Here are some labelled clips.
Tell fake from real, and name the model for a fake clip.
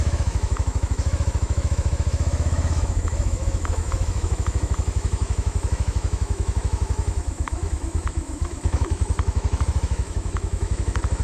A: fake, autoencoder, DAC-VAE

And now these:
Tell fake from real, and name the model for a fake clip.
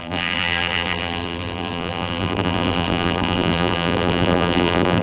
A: fake, vocoder, BigVGAN v2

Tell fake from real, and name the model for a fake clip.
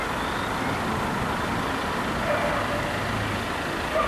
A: real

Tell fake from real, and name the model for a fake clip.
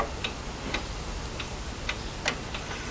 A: real